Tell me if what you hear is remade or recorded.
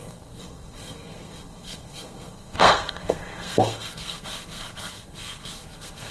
remade